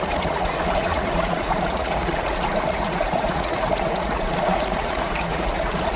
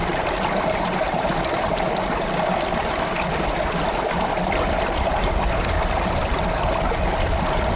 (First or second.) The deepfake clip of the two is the first